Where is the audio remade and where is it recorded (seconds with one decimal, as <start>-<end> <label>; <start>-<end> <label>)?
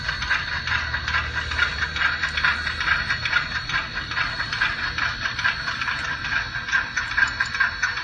0.0-3.2 recorded; 3.2-4.5 remade; 4.5-8.0 recorded